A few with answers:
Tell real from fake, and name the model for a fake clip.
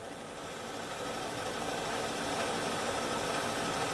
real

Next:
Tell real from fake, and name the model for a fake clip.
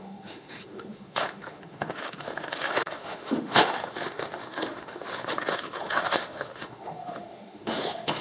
fake, autoencoder, DAC-VAE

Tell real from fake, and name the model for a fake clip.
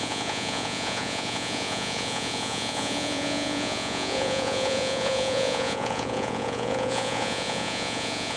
fake, vocoder, Vocos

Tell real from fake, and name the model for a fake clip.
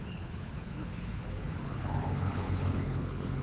fake, codec, HILCodec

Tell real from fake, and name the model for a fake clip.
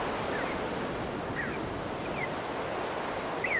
real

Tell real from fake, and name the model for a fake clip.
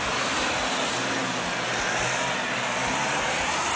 real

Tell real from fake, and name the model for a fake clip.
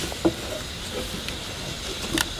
real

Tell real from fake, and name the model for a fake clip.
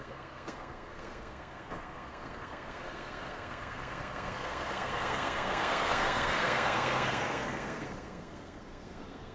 fake, codec, SNAC